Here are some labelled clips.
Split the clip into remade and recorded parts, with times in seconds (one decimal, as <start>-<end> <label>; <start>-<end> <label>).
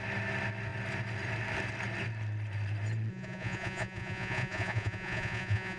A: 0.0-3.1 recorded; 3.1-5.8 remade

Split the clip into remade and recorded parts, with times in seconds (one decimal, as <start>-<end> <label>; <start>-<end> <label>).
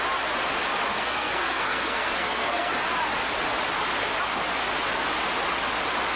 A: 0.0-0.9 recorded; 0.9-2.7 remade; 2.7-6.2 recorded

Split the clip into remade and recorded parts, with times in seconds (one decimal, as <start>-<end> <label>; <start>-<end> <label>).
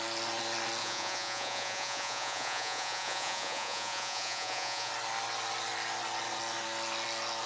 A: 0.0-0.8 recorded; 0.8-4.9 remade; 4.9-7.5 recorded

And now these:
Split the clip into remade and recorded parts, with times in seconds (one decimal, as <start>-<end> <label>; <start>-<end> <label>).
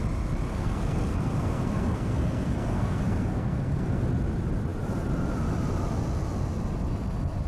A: 0.0-0.5 recorded; 0.5-4.0 remade; 4.0-7.5 recorded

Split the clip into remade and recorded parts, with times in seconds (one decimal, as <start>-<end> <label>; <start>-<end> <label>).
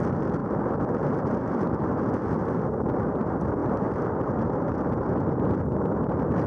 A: 0.0-3.6 recorded; 3.6-4.3 remade; 4.3-6.5 recorded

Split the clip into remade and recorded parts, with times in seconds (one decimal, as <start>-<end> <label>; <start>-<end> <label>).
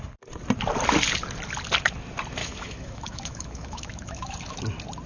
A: 0.0-2.4 recorded; 2.4-4.6 remade; 4.6-5.1 recorded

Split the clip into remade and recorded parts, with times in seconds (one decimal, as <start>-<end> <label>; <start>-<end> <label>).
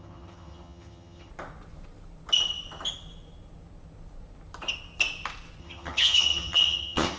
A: 0.0-1.3 remade; 1.3-5.6 recorded; 5.6-7.2 remade